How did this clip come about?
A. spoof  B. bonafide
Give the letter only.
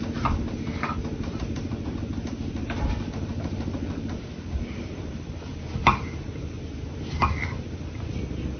B